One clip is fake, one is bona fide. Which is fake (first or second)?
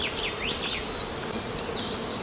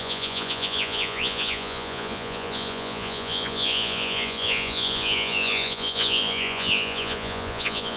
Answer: second